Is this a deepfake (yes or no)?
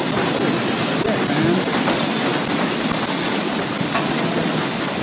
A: no